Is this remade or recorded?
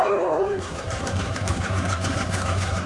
remade